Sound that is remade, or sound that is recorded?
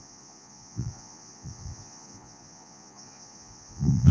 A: remade